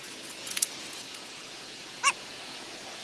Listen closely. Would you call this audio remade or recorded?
remade